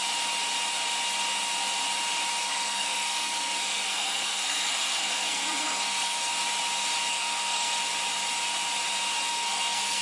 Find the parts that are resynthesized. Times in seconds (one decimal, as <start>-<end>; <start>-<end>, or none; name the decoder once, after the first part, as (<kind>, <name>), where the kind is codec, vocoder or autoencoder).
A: 2.4-6.3 (codec, SNAC); 7.1-7.8; 9.3-10.0